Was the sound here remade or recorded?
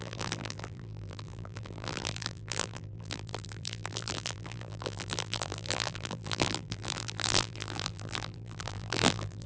remade